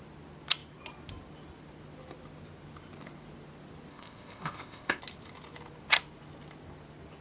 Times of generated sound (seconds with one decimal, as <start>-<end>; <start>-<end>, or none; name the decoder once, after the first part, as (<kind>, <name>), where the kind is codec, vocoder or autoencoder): 3.9-5.0 (codec, ZipCodec)